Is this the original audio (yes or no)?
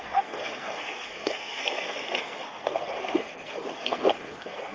no